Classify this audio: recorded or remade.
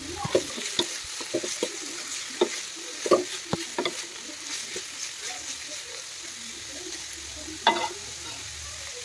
recorded